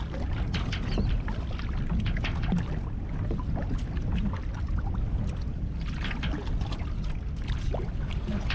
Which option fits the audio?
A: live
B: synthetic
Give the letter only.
A